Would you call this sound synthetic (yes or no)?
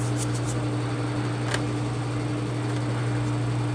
no